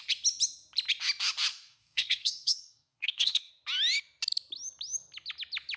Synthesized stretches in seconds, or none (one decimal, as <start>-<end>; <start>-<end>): 1.5-3.5